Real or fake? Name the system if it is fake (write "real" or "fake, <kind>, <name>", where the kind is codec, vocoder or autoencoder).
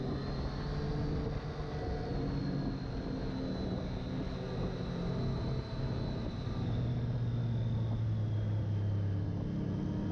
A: real